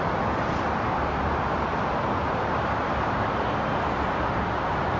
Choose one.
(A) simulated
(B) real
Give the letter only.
B